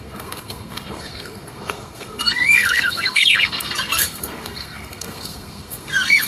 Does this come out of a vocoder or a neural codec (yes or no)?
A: yes